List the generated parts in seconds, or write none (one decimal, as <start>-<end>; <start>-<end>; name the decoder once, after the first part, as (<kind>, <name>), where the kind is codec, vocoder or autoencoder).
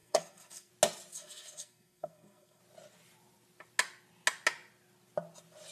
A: 0.0-0.7 (codec, SNAC); 1.1-2.6